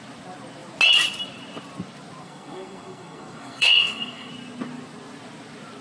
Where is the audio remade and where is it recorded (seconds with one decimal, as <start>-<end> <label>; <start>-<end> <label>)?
0.0-2.2 recorded; 2.2-4.3 remade; 4.3-5.8 recorded